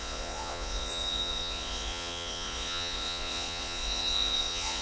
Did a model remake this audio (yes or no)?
yes